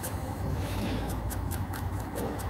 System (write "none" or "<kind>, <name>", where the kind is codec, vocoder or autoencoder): autoencoder, DAC-VAE